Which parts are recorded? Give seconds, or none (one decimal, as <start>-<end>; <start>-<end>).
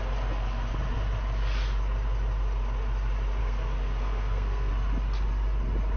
0.0-3.4; 4.7-6.0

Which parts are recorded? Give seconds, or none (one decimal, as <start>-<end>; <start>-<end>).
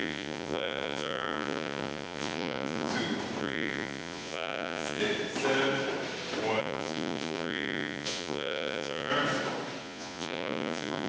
2.9-3.4; 5.0-6.6; 9.1-9.8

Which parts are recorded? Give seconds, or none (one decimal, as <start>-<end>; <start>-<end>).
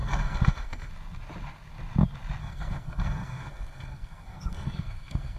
0.9-2.4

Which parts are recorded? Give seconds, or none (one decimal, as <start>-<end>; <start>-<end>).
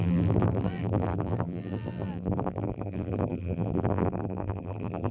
none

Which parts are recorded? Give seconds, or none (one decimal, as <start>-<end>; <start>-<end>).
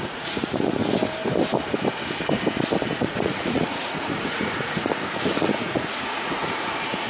0.8-3.0